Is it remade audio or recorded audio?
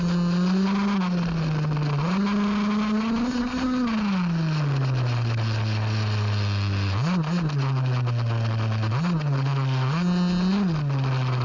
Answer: recorded